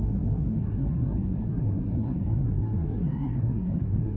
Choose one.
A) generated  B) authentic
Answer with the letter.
A